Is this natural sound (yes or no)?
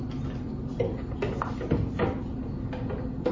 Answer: yes